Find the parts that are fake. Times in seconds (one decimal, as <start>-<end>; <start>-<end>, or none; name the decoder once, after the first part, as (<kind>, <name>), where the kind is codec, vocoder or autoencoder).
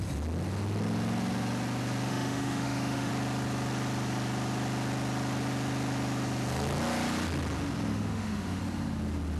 2.1-3.1 (autoencoder, DAC-VAE); 7.9-8.6